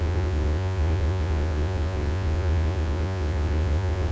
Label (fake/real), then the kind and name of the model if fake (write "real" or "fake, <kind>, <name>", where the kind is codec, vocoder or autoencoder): fake, vocoder, Vocos